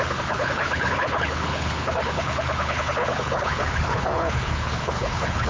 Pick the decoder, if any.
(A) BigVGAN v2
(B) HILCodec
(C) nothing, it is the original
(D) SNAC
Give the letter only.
B